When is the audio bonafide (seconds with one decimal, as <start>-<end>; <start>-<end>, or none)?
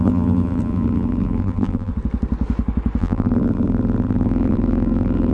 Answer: 1.9-3.0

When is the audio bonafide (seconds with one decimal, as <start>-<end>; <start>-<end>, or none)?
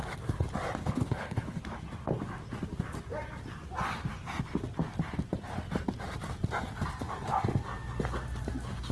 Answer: 0.0-0.8; 1.6-8.9